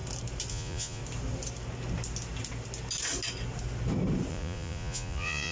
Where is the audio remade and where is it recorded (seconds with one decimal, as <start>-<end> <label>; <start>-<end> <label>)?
0.0-0.5 recorded; 0.5-1.0 remade; 1.0-4.3 recorded; 4.3-5.5 remade